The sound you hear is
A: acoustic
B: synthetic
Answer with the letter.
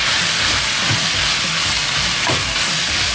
A